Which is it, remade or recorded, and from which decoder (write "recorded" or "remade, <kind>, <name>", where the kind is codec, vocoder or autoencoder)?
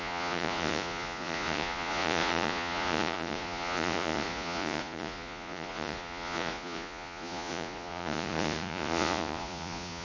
remade, vocoder, Vocos